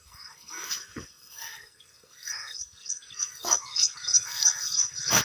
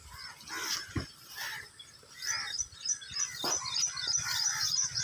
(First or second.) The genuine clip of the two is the second